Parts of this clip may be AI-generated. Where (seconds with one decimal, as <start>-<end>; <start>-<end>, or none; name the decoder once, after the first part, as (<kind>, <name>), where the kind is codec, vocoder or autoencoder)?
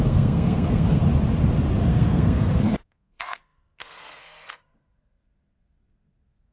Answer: 0.0-1.0 (codec, SNAC); 1.9-6.5